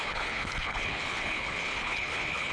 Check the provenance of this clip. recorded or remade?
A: remade